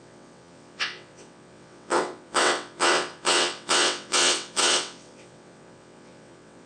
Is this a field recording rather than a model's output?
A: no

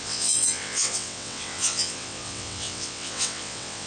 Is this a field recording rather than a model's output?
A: no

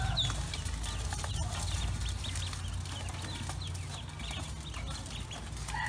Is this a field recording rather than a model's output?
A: yes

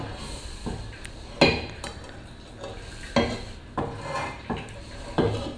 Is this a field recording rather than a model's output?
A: yes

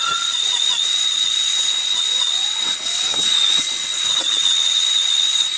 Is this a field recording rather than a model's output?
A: no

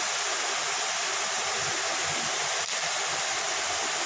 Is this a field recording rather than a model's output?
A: yes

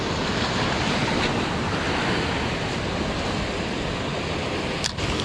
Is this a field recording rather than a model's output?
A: yes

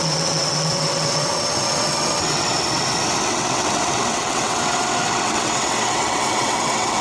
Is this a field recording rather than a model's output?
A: no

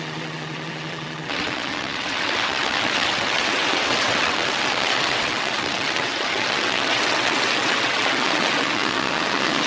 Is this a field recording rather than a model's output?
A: no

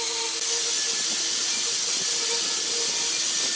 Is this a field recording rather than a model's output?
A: yes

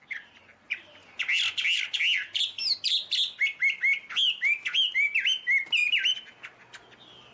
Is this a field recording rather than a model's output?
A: yes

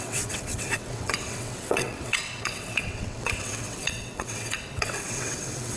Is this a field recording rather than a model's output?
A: no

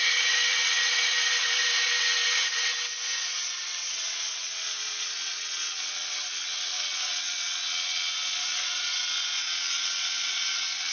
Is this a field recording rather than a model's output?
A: no